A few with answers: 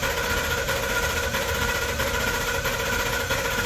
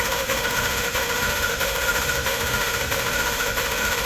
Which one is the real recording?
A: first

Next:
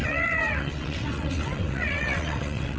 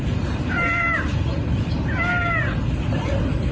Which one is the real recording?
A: second